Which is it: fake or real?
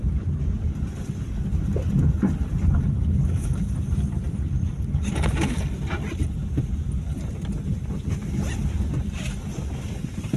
real